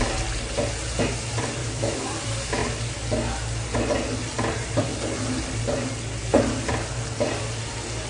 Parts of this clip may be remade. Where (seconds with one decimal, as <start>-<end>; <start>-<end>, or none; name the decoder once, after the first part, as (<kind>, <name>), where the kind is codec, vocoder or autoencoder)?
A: 1.6-2.1 (autoencoder, DAC-VAE)